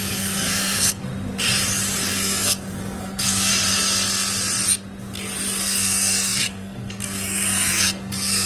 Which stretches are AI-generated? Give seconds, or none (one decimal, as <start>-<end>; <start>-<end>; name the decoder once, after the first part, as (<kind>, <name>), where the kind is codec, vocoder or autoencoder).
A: 0.0-1.1 (codec, SNAC); 2.1-3.5; 5.6-8.5